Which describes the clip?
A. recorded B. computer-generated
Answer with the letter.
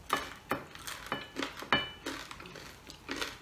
A